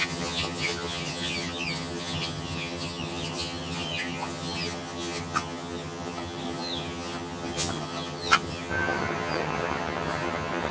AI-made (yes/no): yes